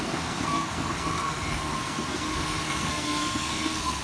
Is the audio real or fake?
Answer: fake